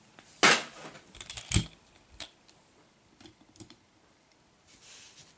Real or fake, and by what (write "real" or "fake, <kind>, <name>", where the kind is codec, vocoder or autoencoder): real